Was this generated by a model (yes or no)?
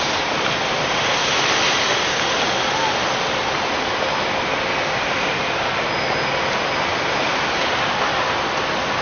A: no